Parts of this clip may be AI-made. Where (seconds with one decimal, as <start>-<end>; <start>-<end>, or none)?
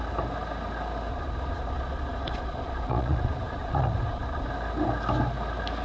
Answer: 1.1-4.5